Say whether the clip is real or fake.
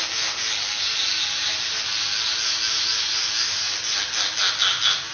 real